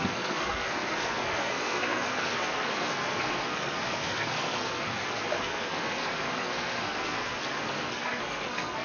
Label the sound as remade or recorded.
remade